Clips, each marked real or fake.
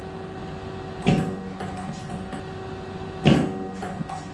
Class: real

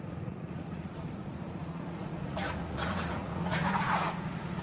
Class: fake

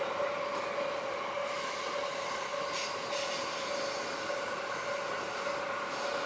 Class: real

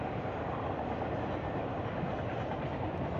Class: real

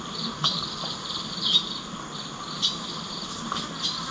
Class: real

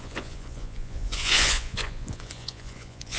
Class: fake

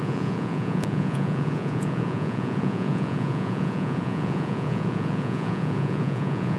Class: fake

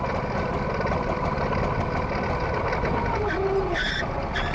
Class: real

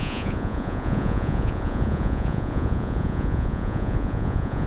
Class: fake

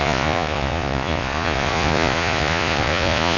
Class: fake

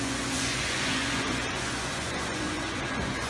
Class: fake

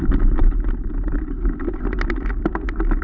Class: real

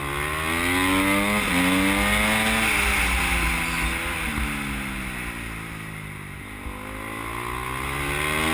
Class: real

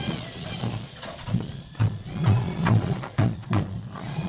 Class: fake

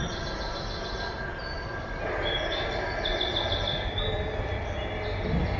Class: real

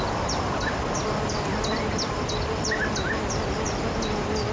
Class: real